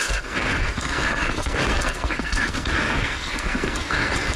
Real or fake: fake